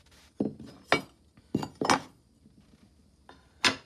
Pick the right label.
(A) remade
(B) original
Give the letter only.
B